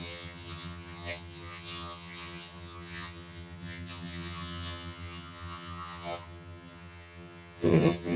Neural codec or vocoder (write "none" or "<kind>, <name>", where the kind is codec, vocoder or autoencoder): vocoder, HiFi-GAN